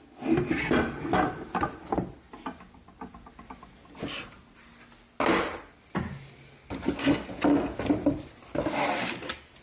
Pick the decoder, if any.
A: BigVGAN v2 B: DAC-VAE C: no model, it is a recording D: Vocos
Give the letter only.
C